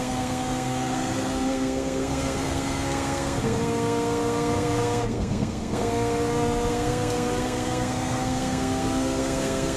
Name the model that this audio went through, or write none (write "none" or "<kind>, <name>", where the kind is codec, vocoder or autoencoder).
codec, SNAC